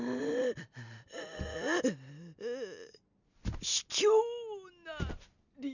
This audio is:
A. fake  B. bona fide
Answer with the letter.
B